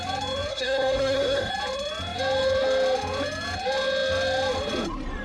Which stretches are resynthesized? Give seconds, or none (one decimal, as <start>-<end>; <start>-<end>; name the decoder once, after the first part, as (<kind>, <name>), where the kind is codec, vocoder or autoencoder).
0.5-1.5 (codec, SNAC)